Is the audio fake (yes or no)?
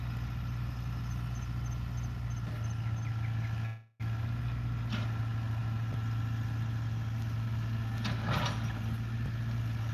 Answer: no